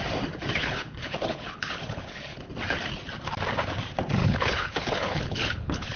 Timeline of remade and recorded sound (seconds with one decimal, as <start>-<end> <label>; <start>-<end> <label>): 0.0-0.6 recorded; 0.6-2.5 remade; 2.5-4.2 recorded; 4.2-6.0 remade

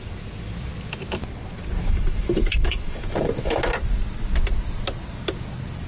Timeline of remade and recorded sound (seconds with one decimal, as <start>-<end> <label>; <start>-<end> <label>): 0.0-1.8 recorded; 1.8-3.6 remade; 3.6-5.9 recorded